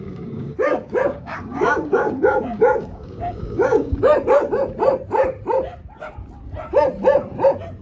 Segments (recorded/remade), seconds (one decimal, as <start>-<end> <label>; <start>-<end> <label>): 0.0-4.1 remade; 4.1-7.8 recorded